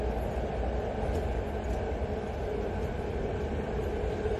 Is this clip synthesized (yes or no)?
no